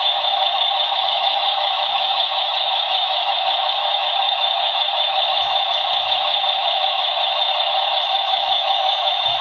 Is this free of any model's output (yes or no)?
no